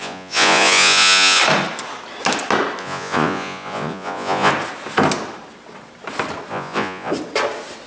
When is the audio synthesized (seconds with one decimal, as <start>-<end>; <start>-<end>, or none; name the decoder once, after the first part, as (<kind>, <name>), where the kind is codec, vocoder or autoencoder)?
0.0-1.4 (vocoder, Vocos); 2.8-4.5; 6.5-7.1